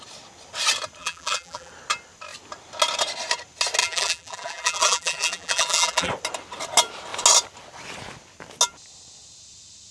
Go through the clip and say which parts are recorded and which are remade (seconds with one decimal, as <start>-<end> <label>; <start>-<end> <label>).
0.0-1.0 recorded; 1.0-1.7 remade; 1.7-3.8 recorded; 3.8-6.1 remade; 6.1-9.9 recorded